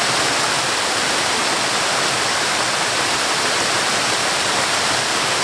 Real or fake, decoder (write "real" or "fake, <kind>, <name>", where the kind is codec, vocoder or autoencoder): real